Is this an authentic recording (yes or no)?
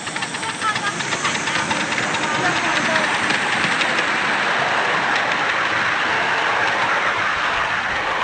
yes